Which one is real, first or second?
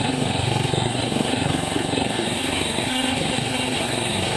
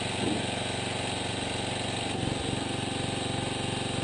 second